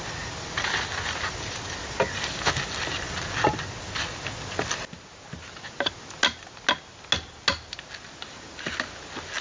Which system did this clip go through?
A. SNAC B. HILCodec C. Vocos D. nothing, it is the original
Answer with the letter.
D